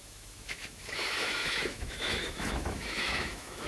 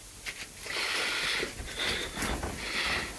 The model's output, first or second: first